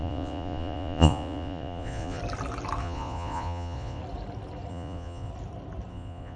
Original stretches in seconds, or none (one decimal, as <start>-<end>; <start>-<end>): 2.2-2.8; 4.0-4.7; 5.3-5.9